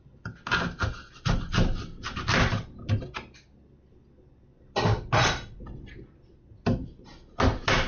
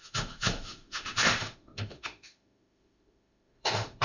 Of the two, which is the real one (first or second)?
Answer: first